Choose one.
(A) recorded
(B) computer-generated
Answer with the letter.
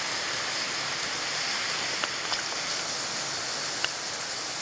A